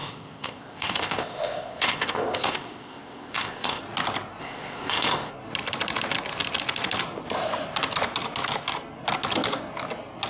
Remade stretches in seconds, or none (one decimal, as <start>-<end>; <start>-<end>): 0.0-3.8; 4.4-5.3

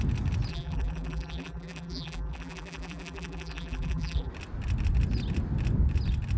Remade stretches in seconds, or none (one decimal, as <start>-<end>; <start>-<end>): 0.5-4.3

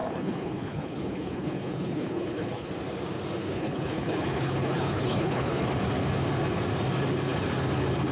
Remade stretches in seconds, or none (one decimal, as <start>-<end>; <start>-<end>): 0.0-2.7; 3.4-5.6